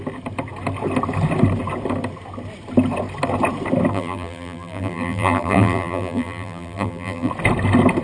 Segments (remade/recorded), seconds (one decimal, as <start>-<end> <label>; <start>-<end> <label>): 0.0-3.9 recorded; 3.9-7.3 remade; 7.3-8.0 recorded

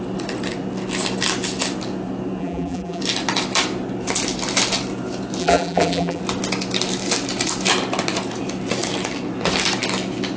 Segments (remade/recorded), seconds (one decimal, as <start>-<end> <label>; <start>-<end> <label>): 0.0-2.4 recorded; 2.4-3.0 remade; 3.0-5.4 recorded; 5.4-6.2 remade; 6.2-10.4 recorded

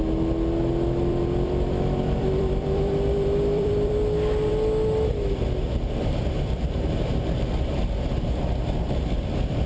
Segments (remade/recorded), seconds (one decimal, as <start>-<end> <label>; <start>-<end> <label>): 0.0-1.1 recorded; 1.1-3.9 remade; 3.9-9.7 recorded

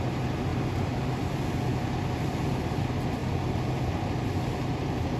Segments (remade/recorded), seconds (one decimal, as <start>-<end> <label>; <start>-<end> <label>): 0.0-0.5 recorded; 0.5-1.3 remade; 1.3-3.2 recorded; 3.2-5.2 remade

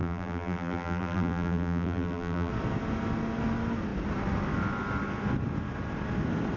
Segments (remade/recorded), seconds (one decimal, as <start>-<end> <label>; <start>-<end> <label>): 0.0-2.5 remade; 2.5-6.6 recorded

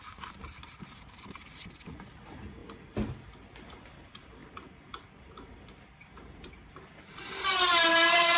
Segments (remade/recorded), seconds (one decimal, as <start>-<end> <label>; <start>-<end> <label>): 0.0-2.6 remade; 2.6-3.7 recorded; 3.7-8.4 remade